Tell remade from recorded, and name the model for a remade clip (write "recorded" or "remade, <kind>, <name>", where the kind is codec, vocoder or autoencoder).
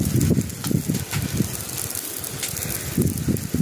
recorded